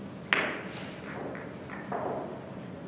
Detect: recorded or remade recorded